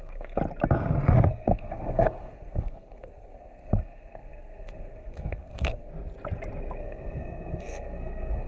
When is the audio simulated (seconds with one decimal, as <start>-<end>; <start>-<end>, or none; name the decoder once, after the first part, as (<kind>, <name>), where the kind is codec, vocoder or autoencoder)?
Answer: 0.0-0.4 (codec, SNAC); 1.3-5.9; 6.8-8.5